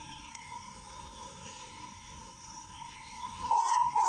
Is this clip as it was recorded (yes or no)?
no